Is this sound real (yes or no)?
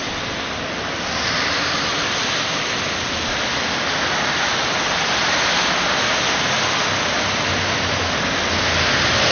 yes